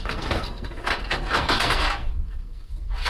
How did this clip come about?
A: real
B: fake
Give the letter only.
B